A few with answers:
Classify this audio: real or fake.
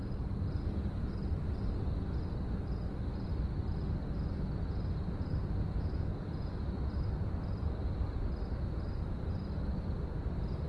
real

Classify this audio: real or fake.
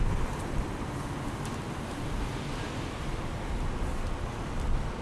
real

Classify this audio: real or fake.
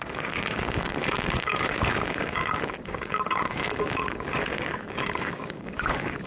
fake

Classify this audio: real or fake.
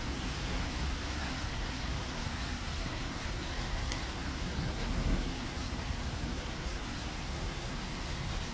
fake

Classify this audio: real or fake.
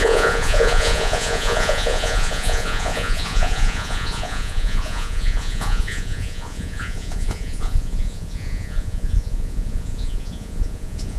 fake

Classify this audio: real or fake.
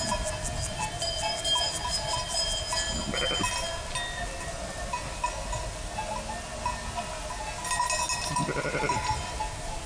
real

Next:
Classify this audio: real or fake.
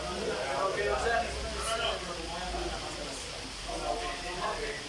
real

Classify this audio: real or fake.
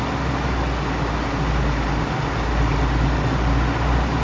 real